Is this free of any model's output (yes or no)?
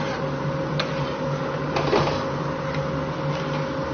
yes